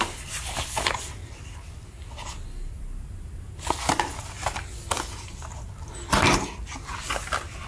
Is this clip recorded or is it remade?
recorded